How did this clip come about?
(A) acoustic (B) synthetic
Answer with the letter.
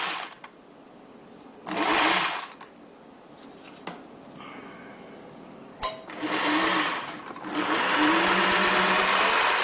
A